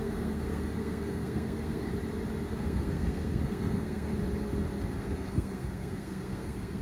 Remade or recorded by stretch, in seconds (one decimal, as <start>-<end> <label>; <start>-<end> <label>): 0.0-1.9 remade; 1.9-2.5 recorded; 2.5-4.1 remade; 4.1-5.0 recorded; 5.0-6.8 remade